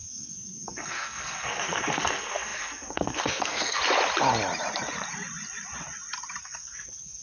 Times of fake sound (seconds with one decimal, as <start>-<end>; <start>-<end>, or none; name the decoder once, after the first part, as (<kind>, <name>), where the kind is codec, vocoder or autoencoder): 0.0-3.8 (codec, SNAC); 6.4-7.2